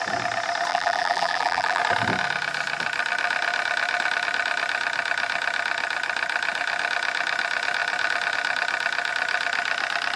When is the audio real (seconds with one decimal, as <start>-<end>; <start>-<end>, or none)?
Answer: 0.0-0.7; 1.8-10.2